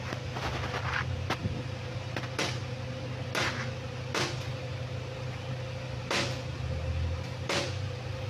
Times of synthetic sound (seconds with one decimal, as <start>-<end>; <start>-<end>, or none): none